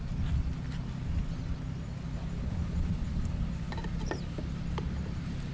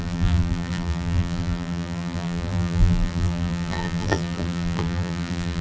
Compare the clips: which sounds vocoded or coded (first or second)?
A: second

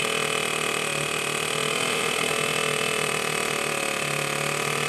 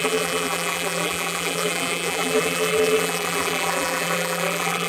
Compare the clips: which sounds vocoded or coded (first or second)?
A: second